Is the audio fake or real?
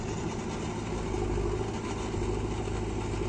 real